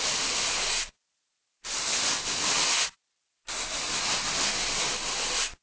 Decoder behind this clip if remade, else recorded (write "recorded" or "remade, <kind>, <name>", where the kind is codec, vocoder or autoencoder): recorded